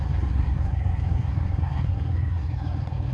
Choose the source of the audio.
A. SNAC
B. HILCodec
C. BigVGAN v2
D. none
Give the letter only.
A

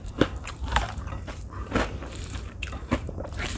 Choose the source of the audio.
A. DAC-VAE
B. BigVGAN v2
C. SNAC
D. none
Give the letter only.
B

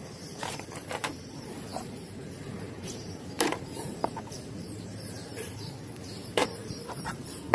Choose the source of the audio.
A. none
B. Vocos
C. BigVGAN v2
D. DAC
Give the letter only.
C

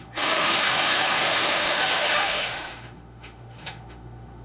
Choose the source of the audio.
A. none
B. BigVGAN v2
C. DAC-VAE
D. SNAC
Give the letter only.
C